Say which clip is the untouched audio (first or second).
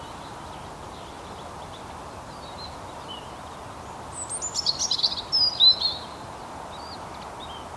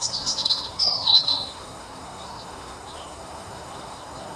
first